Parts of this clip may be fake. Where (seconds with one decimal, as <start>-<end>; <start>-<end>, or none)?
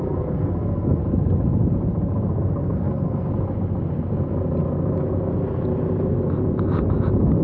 0.0-1.0; 2.3-3.3